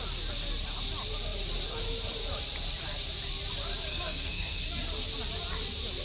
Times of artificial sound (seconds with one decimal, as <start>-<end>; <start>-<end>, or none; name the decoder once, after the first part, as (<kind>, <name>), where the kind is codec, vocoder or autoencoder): 3.9-4.6 (codec, SNAC)